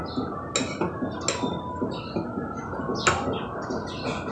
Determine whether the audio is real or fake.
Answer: real